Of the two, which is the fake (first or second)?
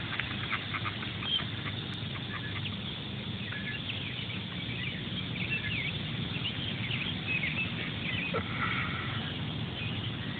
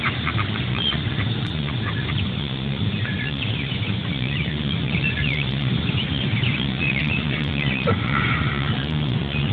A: second